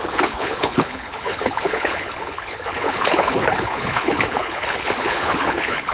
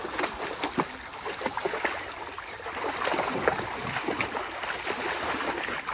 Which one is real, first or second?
second